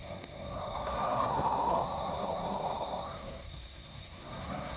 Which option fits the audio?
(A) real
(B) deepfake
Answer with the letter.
B